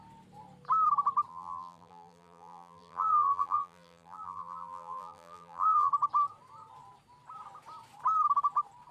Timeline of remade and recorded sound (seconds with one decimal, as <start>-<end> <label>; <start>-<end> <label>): 0.0-1.3 recorded; 1.3-5.9 remade; 5.9-8.9 recorded